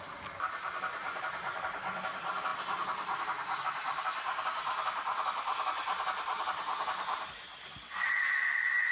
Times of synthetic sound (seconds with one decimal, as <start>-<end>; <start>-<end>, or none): none